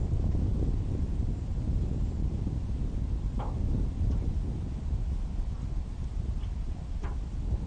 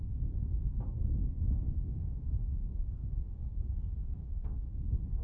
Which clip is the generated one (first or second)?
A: second